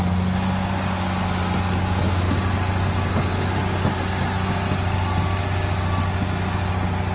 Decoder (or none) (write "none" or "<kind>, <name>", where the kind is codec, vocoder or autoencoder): none